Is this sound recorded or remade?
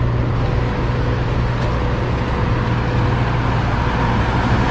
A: recorded